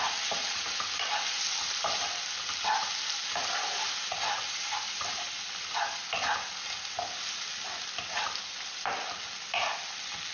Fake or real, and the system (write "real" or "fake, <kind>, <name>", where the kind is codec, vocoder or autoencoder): real